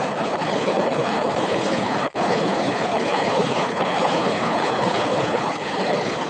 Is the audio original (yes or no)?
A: no